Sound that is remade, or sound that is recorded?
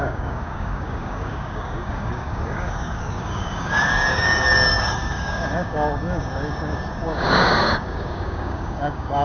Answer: remade